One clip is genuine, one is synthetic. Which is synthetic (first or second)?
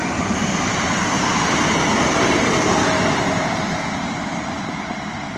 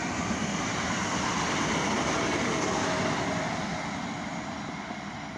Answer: first